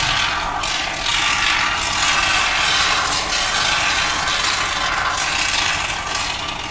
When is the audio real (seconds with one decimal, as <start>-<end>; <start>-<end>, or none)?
0.0-6.7